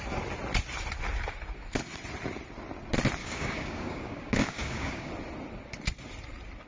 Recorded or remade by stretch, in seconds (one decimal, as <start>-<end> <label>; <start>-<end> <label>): 0.0-3.2 recorded; 3.2-5.1 remade; 5.1-6.7 recorded